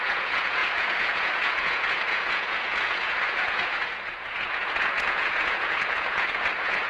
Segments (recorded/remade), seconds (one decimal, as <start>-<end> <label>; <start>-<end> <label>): 0.0-6.9 remade